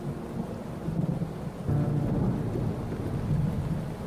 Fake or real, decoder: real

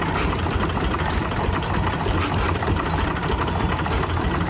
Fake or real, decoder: real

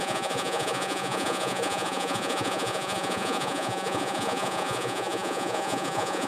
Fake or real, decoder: fake, vocoder, Vocos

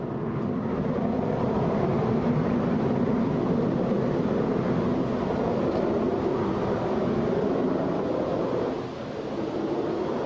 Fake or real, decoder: real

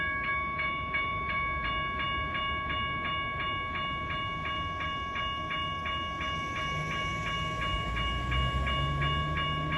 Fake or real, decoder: real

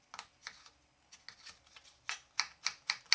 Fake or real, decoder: real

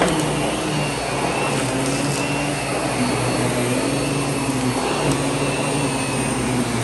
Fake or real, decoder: real